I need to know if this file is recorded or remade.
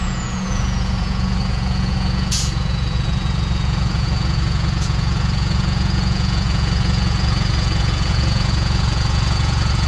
remade